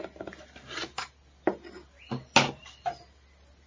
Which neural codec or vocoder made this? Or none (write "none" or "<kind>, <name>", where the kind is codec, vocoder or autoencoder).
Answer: none